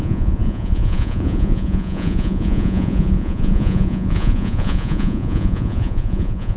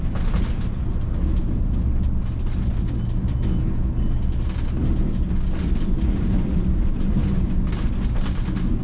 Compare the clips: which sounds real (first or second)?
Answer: second